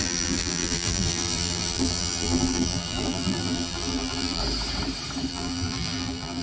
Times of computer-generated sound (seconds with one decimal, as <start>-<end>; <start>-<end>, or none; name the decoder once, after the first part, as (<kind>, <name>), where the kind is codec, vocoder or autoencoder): 0.0-4.4 (vocoder, BigVGAN v2); 5.3-6.4